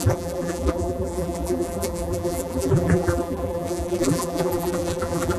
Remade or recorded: remade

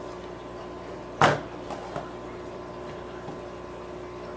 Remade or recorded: recorded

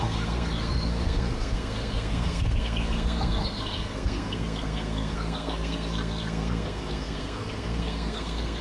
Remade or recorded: remade